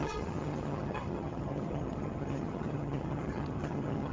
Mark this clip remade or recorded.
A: remade